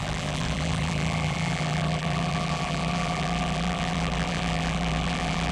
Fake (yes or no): yes